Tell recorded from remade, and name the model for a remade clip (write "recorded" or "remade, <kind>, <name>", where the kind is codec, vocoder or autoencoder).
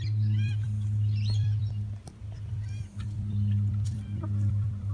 remade, vocoder, BigVGAN v2